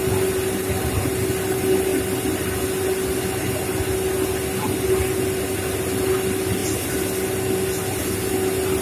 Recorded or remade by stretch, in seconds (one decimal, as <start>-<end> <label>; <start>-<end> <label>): 0.0-8.8 recorded